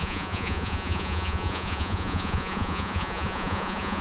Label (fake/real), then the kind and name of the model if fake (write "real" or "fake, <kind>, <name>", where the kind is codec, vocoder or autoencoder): fake, vocoder, Vocos